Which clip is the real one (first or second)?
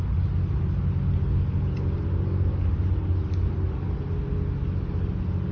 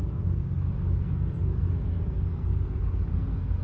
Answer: first